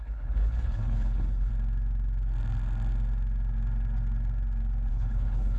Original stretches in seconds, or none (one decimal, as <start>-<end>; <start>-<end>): 1.5-4.9